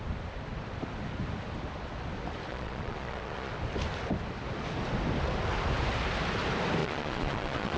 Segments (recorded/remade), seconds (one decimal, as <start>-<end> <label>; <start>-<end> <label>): 0.0-2.5 recorded; 2.5-3.5 remade; 3.5-6.8 recorded; 6.8-7.8 remade